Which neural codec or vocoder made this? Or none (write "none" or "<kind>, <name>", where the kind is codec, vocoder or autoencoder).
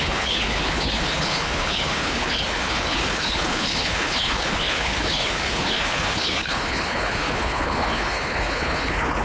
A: codec, HILCodec